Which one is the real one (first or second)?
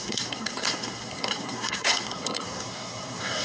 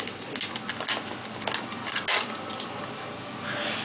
second